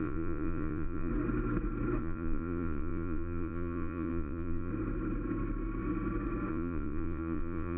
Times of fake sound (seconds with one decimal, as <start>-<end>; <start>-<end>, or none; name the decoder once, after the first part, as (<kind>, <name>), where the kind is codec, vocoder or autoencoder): 0.0-1.1 (vocoder, Vocos); 2.0-4.7; 6.5-7.8